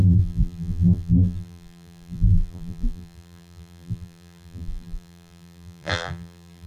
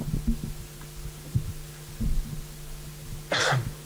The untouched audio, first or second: second